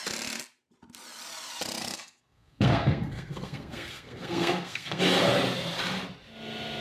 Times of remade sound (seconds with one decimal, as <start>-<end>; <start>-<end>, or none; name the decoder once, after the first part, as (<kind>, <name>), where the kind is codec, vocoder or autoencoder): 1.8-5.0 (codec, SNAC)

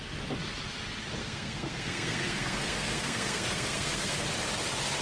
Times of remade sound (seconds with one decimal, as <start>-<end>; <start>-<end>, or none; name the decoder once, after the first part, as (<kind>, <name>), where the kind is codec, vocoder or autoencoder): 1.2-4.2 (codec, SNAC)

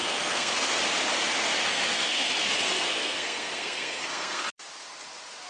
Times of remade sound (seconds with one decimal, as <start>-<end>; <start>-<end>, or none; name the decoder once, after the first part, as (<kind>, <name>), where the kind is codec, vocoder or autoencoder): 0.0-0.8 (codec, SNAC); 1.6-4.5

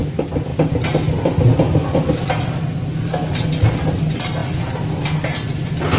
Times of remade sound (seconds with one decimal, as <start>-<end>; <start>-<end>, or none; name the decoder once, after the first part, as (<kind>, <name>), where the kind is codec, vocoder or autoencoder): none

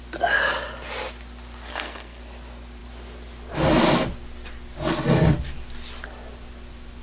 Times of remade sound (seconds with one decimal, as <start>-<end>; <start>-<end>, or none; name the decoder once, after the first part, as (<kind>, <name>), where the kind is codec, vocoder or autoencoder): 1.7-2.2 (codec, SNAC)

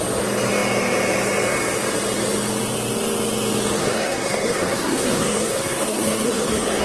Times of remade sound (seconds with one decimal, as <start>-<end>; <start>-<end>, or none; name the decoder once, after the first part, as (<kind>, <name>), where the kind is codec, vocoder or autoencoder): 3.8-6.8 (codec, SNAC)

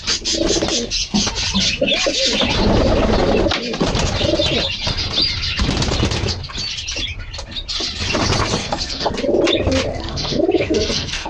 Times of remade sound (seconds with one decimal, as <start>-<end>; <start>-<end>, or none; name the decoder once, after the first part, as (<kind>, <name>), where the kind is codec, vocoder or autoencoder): 8.6-9.1 (codec, SNAC); 9.9-11.3

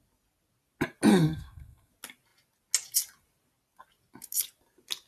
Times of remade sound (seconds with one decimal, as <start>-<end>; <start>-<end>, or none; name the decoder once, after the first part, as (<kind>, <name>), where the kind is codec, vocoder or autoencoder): 1.1-1.9 (codec, SNAC)